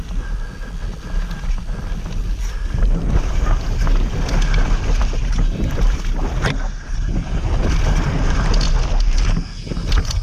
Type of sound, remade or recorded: recorded